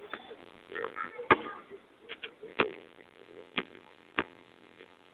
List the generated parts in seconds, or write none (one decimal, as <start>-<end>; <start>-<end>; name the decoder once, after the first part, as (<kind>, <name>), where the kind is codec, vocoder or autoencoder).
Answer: 0.4-1.1 (vocoder, BigVGAN v2); 2.5-5.1